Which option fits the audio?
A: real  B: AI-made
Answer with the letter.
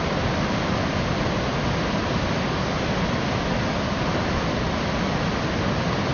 A